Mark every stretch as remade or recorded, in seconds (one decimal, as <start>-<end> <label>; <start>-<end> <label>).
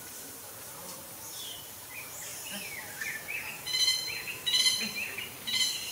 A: 0.0-5.9 remade